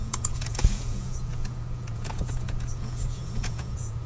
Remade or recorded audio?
remade